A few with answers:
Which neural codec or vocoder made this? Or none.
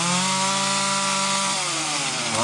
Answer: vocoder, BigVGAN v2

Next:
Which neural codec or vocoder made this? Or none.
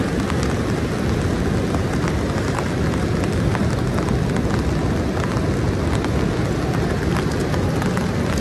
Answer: none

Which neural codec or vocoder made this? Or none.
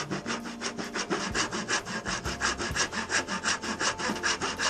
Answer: none